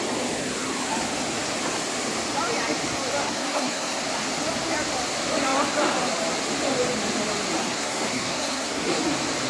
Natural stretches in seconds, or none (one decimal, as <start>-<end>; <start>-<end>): 0.0-3.2; 4.0-7.6; 9.0-9.5